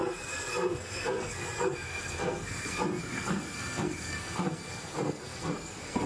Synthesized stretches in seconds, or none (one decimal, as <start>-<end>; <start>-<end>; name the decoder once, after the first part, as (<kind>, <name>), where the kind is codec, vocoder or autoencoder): 0.0-6.1 (codec, SNAC)